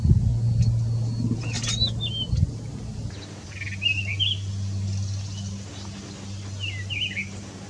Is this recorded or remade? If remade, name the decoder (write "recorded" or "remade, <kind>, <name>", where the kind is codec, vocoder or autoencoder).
recorded